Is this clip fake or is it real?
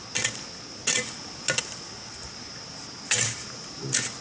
real